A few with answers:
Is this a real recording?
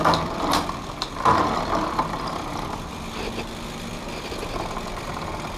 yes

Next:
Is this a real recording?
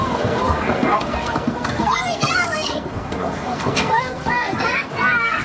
no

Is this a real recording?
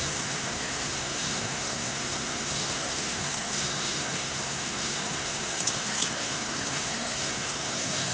no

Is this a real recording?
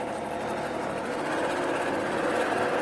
yes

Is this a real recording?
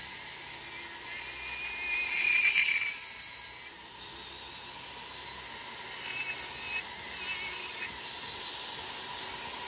yes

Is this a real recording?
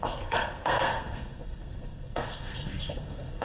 no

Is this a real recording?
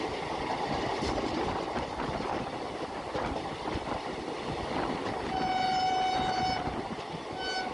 yes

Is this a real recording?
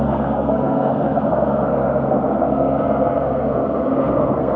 no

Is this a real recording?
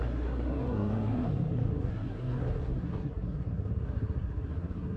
no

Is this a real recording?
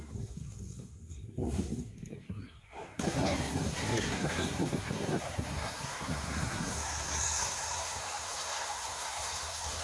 no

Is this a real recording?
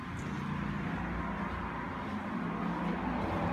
yes